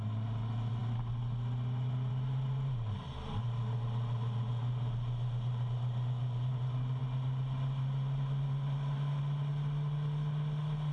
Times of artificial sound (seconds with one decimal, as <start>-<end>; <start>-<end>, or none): none